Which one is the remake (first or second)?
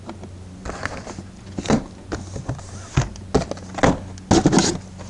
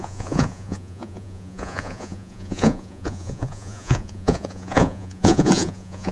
second